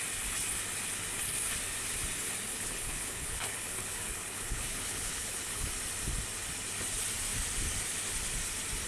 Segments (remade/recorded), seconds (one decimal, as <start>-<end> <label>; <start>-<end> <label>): 0.0-2.5 recorded; 2.5-5.7 remade; 5.7-8.9 recorded